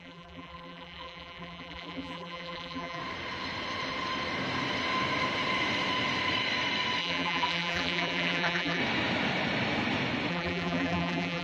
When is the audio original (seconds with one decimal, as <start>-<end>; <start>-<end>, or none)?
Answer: 3.0-7.0; 8.8-10.3